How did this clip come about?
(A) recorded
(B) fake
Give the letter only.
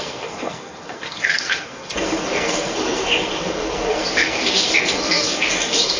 B